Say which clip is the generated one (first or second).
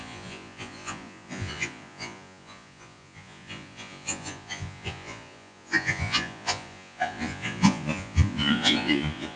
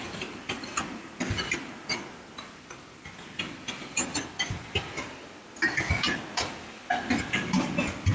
first